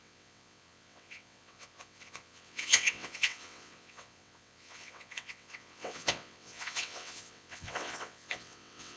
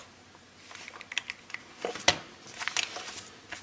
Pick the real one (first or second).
second